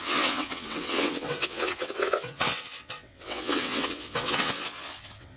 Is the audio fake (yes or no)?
yes